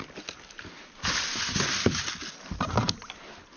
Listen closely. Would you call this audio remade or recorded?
recorded